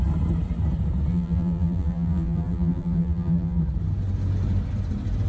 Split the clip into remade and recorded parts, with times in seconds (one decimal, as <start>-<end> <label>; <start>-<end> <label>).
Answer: 0.0-1.1 recorded; 1.1-3.6 remade; 3.6-5.3 recorded